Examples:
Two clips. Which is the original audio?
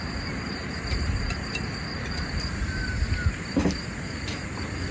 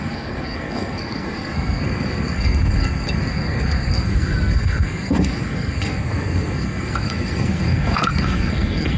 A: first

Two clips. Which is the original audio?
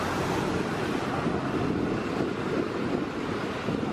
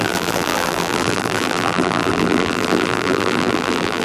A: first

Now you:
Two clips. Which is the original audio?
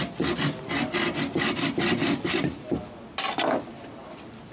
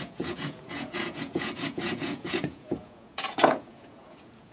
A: first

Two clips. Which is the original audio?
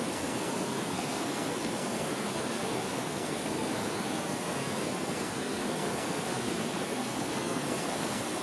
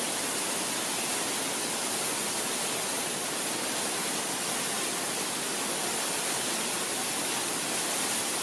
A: second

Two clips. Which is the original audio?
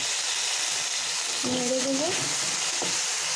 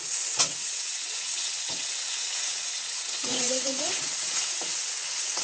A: first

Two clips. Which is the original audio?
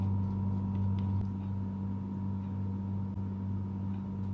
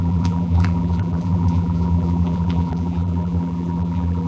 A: first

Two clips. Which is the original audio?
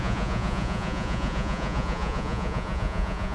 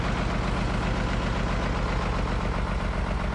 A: second